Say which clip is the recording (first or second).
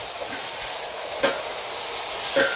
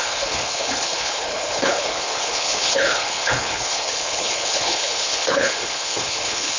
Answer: first